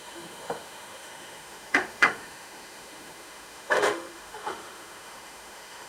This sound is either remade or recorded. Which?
remade